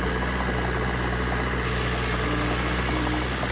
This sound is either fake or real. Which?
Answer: real